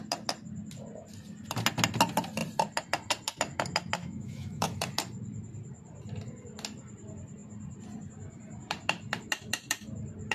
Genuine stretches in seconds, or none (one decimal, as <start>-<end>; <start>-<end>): 0.0-4.0; 4.8-10.3